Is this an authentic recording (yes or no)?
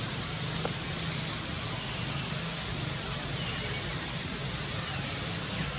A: yes